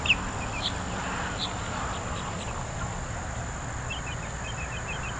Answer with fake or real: fake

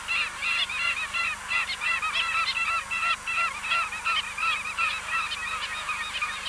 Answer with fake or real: real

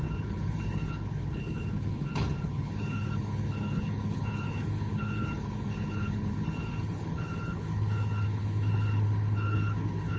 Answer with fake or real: fake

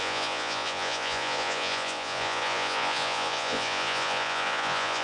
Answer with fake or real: fake